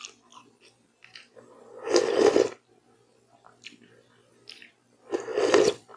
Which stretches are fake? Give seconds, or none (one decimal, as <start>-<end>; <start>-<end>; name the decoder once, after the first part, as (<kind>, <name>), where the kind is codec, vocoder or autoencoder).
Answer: 5.3-6.0 (vocoder, BigVGAN v2)